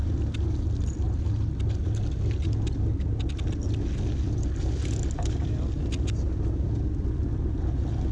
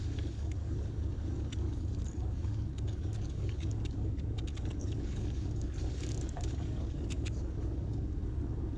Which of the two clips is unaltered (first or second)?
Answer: first